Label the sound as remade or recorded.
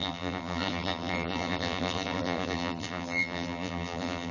remade